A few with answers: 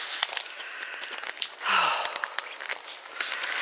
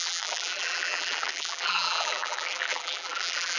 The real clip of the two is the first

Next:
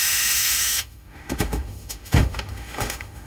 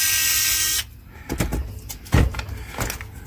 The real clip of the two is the second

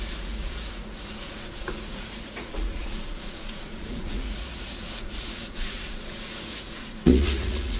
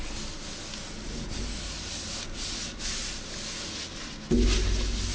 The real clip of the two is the second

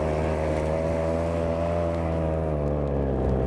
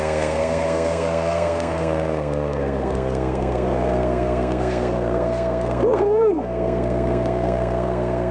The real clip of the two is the first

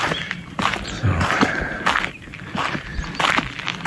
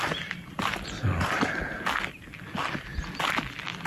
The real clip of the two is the second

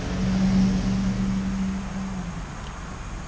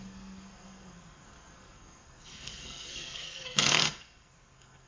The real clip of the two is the first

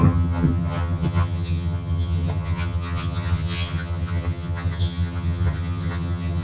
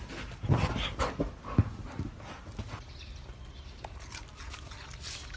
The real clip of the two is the second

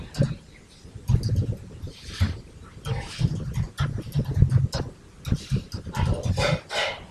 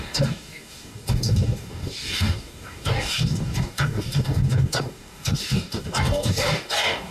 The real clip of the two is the first